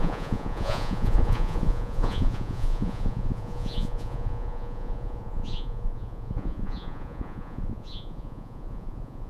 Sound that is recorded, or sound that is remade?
remade